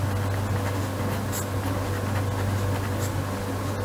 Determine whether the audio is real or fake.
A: real